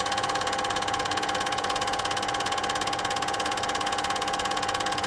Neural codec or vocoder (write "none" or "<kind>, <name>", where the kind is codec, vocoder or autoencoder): vocoder, Vocos